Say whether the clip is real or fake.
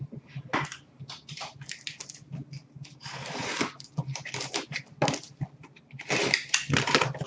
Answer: real